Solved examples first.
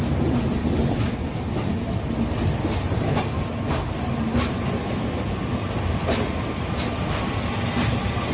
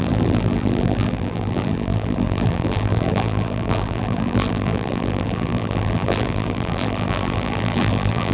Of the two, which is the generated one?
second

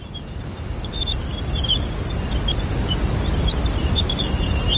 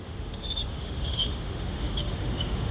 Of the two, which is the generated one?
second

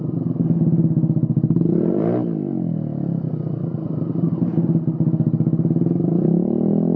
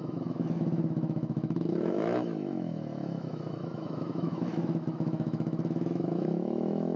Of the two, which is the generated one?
second